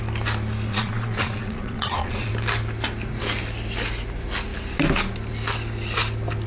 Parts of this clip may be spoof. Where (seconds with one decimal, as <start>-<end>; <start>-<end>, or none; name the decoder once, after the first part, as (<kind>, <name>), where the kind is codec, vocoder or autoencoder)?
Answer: 0.7-2.3 (vocoder, Vocos)